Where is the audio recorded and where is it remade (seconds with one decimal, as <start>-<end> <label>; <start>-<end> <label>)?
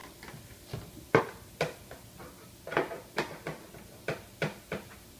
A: 0.0-5.2 recorded